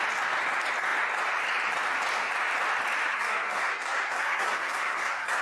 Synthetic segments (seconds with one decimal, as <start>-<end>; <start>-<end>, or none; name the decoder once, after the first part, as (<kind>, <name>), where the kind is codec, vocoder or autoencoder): 3.1-5.4 (codec, SNAC)